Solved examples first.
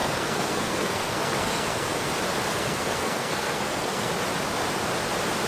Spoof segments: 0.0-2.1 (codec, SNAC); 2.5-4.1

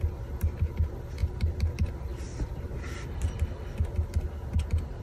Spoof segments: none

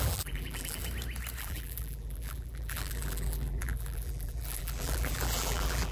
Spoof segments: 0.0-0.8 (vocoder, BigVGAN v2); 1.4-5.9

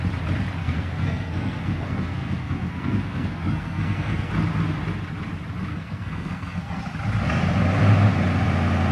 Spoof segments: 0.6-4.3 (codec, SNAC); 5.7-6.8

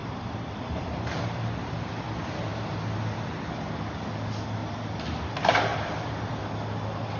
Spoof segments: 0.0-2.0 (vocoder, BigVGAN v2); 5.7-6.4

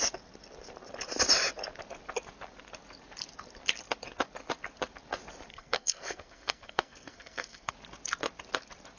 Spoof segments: 5.5-7.7 (codec, SNAC)

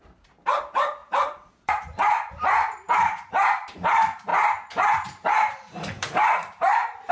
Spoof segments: 0.0-7.1 (vocoder, BigVGAN v2)